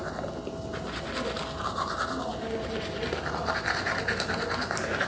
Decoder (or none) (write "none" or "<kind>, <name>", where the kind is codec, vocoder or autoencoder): none